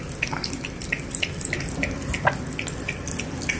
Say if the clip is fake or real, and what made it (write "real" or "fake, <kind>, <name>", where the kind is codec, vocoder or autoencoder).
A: real